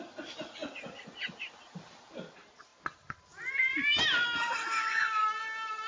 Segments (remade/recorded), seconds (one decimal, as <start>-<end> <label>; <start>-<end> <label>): 0.0-5.9 recorded